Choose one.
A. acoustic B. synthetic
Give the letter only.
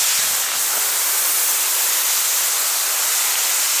A